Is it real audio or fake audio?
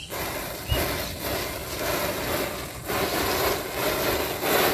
real